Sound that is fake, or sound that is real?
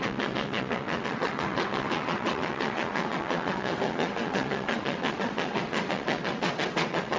fake